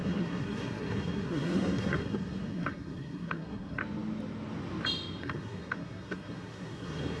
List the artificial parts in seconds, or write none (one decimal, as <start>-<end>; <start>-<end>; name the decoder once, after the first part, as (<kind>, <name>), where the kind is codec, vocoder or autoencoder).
0.0-3.8 (codec, SNAC); 5.2-7.2